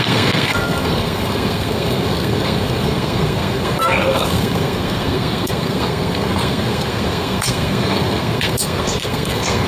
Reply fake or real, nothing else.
fake